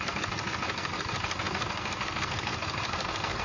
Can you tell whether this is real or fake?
fake